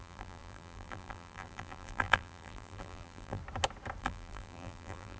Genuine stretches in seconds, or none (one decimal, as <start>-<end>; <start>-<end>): 3.4-4.0

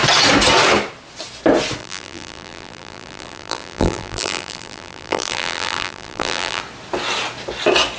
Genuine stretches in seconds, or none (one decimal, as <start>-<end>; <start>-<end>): 0.0-1.8; 6.6-8.0

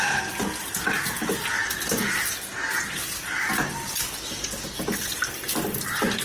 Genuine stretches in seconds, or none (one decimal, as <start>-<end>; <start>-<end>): 0.0-6.2

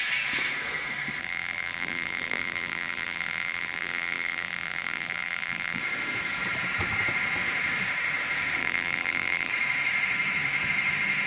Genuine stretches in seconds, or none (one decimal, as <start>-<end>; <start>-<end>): 0.0-1.2; 5.8-8.6; 9.5-11.3

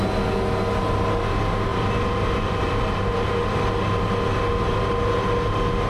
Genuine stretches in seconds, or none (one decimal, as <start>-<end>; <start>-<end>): 0.0-1.7; 3.0-5.9